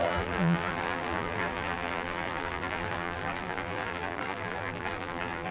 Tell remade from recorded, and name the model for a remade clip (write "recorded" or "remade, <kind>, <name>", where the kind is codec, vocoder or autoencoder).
remade, vocoder, BigVGAN v2